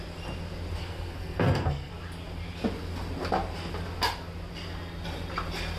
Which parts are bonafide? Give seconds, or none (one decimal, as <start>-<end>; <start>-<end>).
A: 0.0-0.8; 1.9-5.8